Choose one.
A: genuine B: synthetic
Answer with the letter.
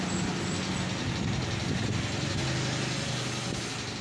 A